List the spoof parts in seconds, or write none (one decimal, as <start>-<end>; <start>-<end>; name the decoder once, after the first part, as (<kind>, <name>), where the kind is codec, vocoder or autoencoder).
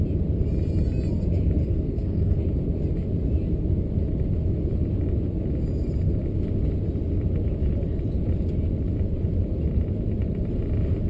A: 1.6-2.4 (codec, SNAC)